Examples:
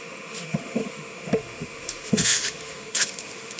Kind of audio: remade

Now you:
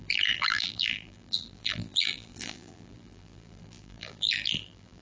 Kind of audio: remade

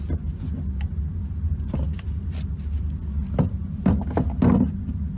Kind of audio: recorded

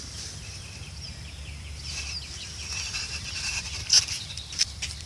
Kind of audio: remade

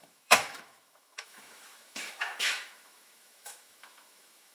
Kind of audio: remade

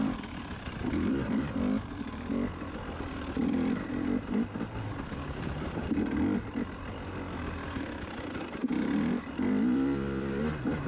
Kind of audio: remade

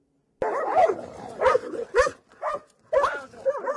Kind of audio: recorded